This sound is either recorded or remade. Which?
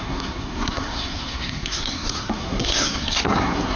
remade